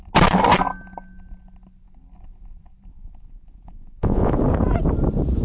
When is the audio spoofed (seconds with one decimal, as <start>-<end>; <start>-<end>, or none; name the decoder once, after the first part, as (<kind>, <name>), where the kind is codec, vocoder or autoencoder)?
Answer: 2.9-4.3 (vocoder, Vocos)